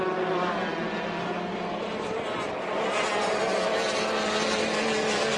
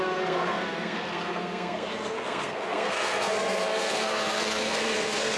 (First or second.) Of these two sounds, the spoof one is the second